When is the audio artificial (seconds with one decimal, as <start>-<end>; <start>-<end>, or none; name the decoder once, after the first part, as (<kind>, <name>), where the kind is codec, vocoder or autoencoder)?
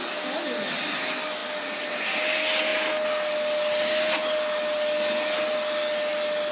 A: none